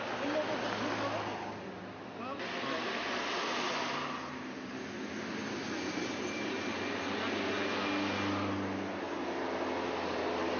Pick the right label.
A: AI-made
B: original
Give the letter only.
B